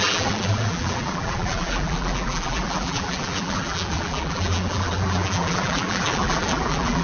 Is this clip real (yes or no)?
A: no